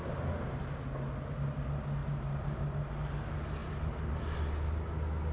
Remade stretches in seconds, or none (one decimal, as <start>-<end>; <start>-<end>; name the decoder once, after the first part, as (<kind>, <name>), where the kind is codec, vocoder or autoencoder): 2.0-2.6 (vocoder, BigVGAN v2); 3.6-4.1